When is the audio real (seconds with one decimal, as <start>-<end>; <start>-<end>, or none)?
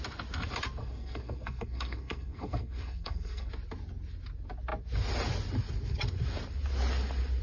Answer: 0.0-0.8; 3.5-7.4